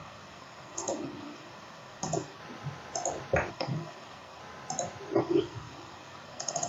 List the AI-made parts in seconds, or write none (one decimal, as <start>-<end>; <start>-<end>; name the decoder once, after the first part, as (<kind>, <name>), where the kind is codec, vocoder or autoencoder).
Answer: 0.0-2.4 (codec, SNAC); 3.5-4.4; 5.2-6.7